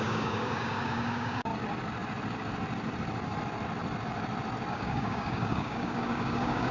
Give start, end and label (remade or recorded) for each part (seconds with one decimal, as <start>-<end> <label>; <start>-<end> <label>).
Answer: 0.0-1.5 remade; 1.5-4.7 recorded; 4.7-6.7 remade